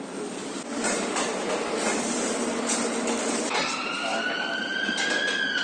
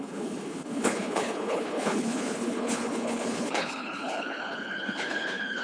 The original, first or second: first